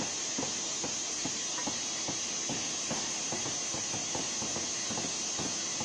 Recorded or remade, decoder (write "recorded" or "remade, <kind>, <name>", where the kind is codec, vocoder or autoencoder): recorded